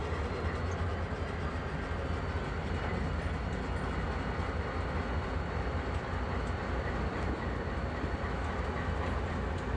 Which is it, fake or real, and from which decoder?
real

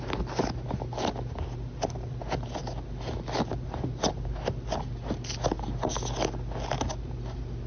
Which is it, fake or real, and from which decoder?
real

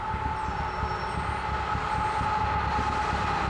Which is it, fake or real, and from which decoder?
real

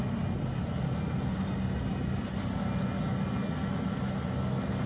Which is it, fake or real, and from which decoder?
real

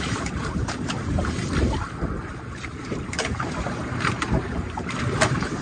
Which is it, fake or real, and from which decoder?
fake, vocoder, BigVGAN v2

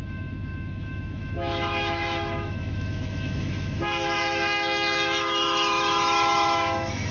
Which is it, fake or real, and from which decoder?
fake, autoencoder, DAC-VAE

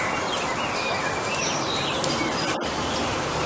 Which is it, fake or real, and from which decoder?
real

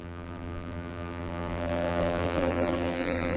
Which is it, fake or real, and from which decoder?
fake, vocoder, BigVGAN v2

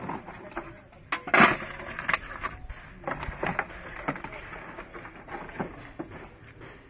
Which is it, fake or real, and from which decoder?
real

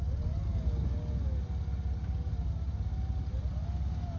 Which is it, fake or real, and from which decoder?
real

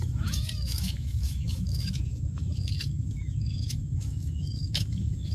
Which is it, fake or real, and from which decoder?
fake, autoencoder, DAC-VAE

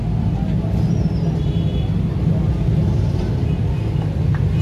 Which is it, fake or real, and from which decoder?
real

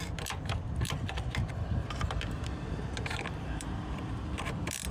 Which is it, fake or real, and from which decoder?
fake, vocoder, BigVGAN v2